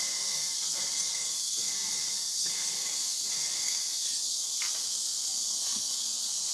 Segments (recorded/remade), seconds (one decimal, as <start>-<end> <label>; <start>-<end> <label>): 0.0-6.5 remade